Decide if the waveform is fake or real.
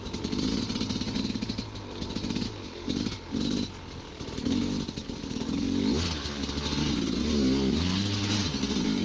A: real